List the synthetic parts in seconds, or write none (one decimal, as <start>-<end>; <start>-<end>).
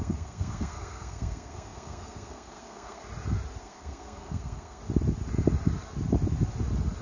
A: 0.0-3.0; 3.6-4.8